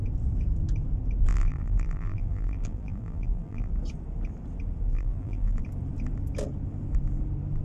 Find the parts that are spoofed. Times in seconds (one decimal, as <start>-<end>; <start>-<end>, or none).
1.3-3.7; 4.9-5.6